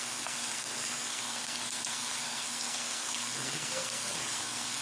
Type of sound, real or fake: fake